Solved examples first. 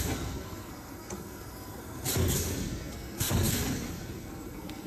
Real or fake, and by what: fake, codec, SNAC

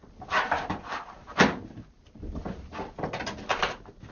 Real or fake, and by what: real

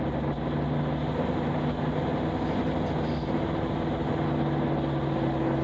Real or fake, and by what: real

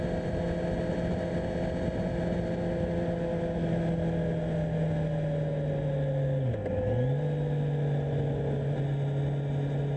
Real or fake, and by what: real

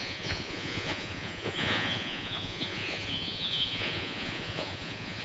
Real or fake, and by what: fake, vocoder, Vocos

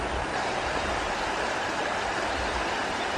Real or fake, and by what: real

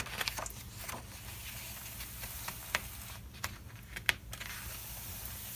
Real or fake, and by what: real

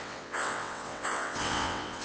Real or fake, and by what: fake, vocoder, WaveNeXt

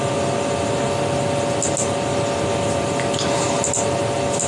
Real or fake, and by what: real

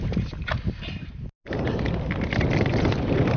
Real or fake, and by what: real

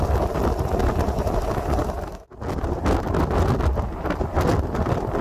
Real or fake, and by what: real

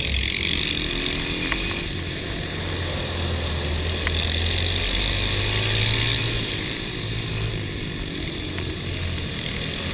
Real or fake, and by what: real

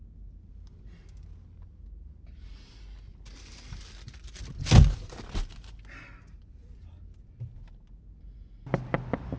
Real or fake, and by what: real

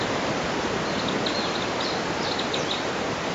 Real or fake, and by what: real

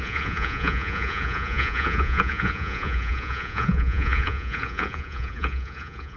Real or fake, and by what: fake, vocoder, Vocos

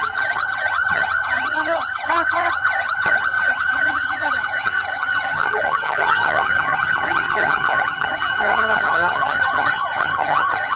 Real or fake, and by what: fake, vocoder, HiFi-GAN